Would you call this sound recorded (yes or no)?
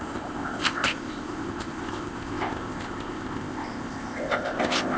no